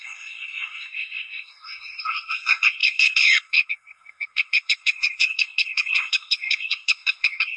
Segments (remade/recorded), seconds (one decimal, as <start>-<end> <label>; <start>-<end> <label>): 0.0-7.6 remade